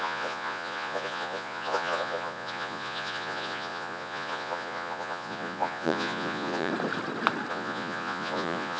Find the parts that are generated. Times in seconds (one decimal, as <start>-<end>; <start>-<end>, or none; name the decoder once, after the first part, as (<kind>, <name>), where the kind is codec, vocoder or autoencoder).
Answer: 0.0-6.7 (vocoder, Vocos); 7.5-8.8